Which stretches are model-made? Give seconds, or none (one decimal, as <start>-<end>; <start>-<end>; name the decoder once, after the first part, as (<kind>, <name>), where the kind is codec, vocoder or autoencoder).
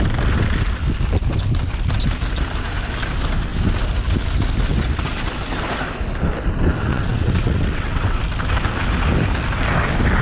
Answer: 6.9-8.2 (vocoder, WaveNeXt)